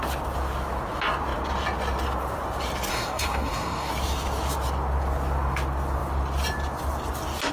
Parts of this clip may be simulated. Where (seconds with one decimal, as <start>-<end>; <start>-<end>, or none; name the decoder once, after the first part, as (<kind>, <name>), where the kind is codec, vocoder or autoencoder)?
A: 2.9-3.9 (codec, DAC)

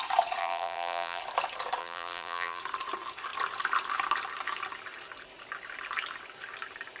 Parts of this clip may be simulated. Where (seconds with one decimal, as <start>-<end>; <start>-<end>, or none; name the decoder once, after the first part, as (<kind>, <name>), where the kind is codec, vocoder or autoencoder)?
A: 0.4-1.2 (vocoder, BigVGAN v2); 1.8-2.6

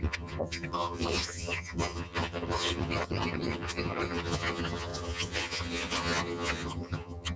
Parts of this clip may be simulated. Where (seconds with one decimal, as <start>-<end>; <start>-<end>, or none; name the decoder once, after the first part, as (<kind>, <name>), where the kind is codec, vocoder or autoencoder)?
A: 0.0-7.4 (vocoder, HiFi-GAN)

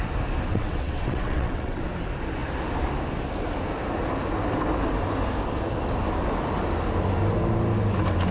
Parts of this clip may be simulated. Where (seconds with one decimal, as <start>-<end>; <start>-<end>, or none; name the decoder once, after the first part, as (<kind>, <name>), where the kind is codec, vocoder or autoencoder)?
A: 0.5-1.8 (vocoder, WaveNeXt)

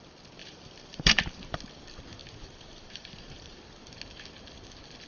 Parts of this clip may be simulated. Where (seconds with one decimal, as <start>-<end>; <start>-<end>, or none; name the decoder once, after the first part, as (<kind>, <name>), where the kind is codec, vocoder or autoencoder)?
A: 0.4-1.6 (vocoder, BigVGAN v2); 2.2-3.6

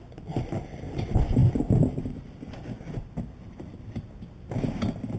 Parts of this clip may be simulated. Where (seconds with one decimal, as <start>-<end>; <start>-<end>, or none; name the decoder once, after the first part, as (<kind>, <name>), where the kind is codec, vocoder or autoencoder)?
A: none

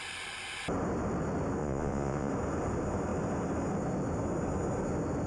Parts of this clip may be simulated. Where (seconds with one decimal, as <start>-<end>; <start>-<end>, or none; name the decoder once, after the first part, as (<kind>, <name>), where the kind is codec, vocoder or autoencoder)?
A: 1.6-2.3 (vocoder, Vocos)